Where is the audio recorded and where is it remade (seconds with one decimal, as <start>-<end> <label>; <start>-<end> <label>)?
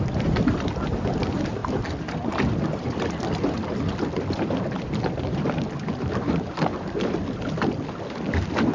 0.0-8.7 recorded